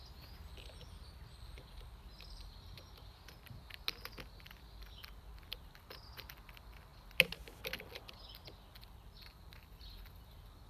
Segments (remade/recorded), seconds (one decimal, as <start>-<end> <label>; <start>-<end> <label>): 0.0-10.7 recorded